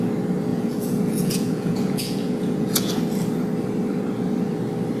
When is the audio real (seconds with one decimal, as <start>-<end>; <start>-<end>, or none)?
0.0-0.5; 3.0-5.0